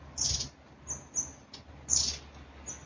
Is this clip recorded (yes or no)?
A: yes